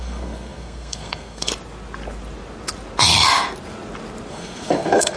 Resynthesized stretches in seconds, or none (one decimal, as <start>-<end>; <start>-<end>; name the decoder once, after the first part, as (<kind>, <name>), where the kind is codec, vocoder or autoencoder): 0.0-1.5 (codec, SNAC); 4.3-5.2